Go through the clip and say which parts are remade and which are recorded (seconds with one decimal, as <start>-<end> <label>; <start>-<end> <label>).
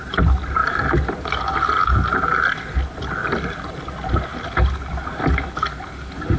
0.0-0.6 recorded; 0.6-2.1 remade; 2.1-3.2 recorded; 3.2-3.7 remade; 3.7-6.4 recorded